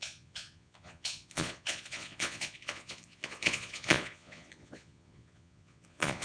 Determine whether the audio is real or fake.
fake